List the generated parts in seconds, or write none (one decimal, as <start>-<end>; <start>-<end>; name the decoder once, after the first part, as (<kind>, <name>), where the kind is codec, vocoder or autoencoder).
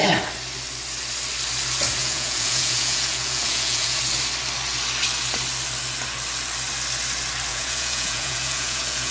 2.0-4.0 (vocoder, Vocos); 7.5-9.1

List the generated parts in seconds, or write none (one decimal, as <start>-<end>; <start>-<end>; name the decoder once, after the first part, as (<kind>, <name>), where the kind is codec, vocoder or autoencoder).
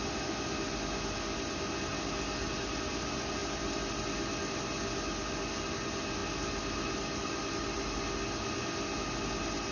none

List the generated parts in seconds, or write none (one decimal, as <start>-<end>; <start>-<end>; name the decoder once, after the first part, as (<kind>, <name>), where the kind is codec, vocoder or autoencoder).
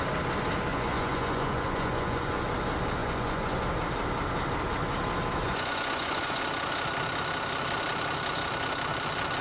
0.7-2.4 (vocoder, Vocos); 3.0-3.6; 5.4-6.4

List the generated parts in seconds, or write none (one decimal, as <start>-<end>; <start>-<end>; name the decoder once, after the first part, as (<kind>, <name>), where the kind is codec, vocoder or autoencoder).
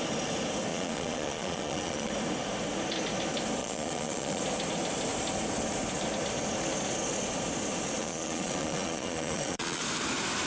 0.7-2.1 (vocoder, Vocos); 3.6-4.4; 8.0-9.8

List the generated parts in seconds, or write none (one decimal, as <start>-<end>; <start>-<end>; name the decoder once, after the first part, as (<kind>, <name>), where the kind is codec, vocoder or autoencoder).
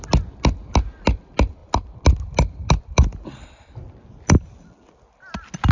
none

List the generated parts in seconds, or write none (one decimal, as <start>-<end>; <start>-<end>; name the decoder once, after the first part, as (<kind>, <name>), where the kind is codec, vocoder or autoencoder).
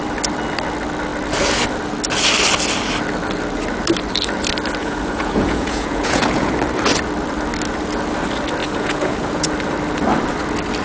4.8-6.5 (vocoder, Vocos); 8.6-9.5